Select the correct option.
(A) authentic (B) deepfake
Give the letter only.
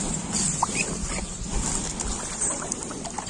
B